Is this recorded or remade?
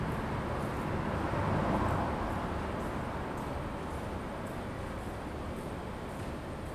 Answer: recorded